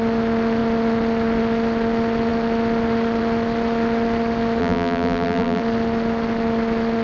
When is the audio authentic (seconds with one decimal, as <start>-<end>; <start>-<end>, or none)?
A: 0.0-4.6; 5.6-7.0